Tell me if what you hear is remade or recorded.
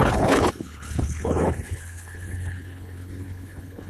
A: remade